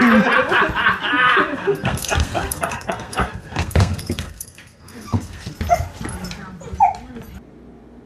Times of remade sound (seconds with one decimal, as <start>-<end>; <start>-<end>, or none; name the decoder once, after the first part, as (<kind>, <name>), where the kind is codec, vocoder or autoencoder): 1.5-5.5 (codec, SNAC)